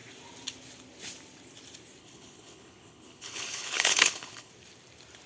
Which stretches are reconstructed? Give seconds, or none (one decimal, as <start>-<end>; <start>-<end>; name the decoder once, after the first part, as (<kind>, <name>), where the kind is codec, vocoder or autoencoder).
2.0-4.5 (codec, HILCodec)